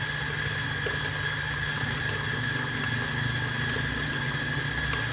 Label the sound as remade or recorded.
recorded